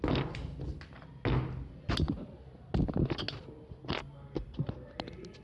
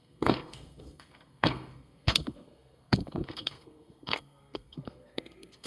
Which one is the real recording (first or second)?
first